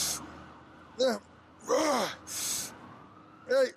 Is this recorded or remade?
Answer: recorded